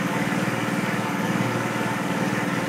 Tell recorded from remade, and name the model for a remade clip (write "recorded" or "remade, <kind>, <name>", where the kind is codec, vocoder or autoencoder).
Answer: remade, codec, DAC